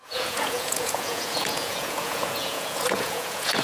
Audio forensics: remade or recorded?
remade